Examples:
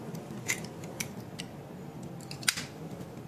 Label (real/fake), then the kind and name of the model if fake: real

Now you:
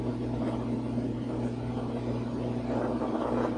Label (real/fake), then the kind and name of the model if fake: real